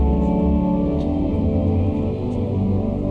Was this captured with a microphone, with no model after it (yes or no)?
yes